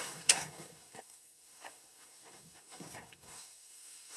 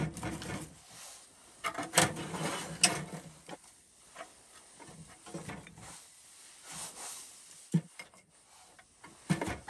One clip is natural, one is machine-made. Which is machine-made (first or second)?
first